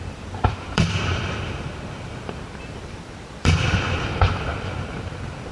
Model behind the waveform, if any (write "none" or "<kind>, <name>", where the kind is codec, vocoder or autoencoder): vocoder, BigVGAN v2